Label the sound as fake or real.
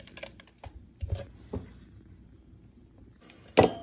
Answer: real